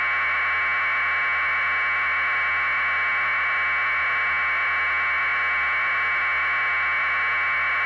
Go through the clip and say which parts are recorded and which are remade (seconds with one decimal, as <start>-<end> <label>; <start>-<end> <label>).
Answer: 0.0-7.9 recorded